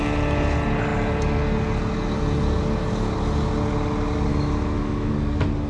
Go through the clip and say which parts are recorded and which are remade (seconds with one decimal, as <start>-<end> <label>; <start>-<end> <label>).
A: 0.0-4.3 recorded; 4.3-5.1 remade; 5.1-5.7 recorded